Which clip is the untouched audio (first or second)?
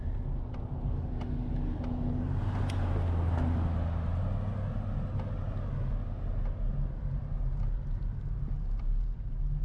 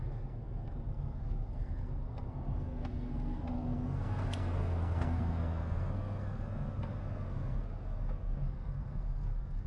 first